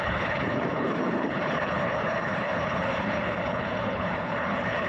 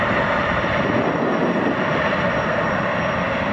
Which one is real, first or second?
second